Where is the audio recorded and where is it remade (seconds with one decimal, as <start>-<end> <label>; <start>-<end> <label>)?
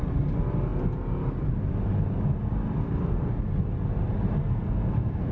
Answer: 0.0-4.4 recorded; 4.4-5.3 remade